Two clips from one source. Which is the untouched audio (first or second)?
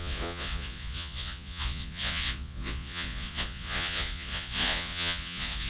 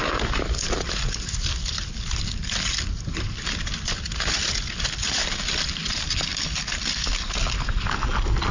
second